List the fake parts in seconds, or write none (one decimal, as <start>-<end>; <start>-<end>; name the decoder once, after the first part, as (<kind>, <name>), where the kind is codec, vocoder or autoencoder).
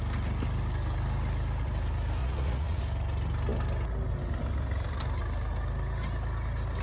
2.2-2.8 (vocoder, Vocos)